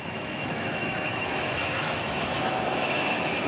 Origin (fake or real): fake